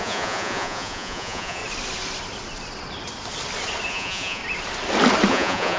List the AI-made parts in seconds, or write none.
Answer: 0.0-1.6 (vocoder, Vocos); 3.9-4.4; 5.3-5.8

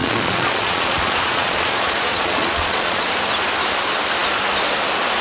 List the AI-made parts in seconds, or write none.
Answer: 0.0-3.1 (vocoder, Vocos)

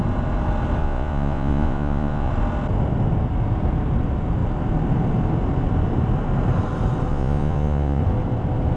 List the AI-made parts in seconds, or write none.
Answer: 0.8-2.3 (vocoder, Vocos); 7.1-8.0

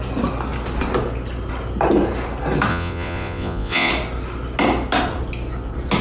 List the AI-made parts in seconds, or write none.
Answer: 2.7-3.9 (vocoder, Vocos)